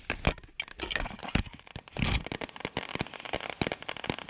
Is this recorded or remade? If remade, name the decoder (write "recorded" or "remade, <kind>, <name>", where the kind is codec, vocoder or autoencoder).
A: recorded